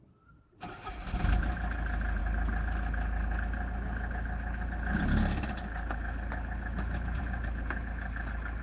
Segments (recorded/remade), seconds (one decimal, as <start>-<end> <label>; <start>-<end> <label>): 0.0-8.6 recorded